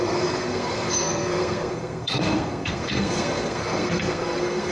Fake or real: fake